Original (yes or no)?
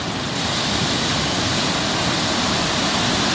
yes